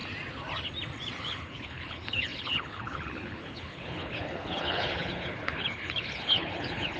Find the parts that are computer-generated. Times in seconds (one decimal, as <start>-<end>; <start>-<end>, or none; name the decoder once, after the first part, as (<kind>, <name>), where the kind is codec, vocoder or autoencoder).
1.2-7.0 (codec, HILCodec)